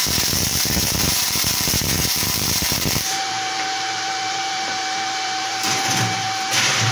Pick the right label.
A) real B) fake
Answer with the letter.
B